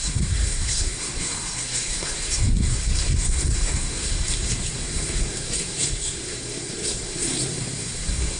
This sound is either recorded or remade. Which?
remade